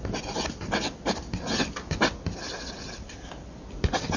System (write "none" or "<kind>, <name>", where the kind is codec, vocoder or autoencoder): none